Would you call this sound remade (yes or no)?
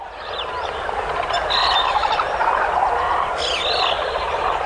no